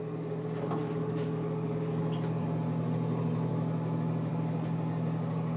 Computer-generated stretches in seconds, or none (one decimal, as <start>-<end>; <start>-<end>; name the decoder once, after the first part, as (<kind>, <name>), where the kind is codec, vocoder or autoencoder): 0.8-2.0 (codec, DAC)